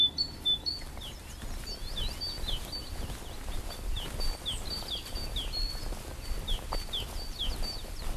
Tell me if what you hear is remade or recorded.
recorded